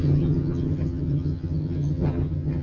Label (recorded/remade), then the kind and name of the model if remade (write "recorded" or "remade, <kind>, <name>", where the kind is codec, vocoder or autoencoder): remade, vocoder, HiFi-GAN